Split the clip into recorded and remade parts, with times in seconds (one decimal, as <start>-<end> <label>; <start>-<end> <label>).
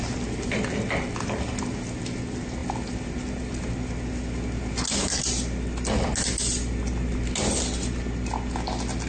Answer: 0.0-9.1 recorded